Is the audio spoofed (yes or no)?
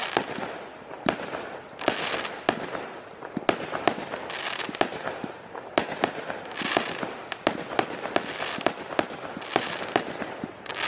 no